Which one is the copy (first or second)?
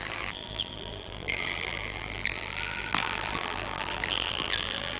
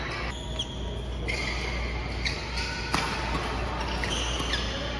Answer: first